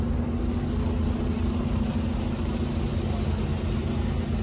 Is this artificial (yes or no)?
no